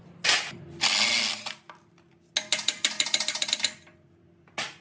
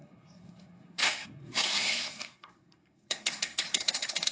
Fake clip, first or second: second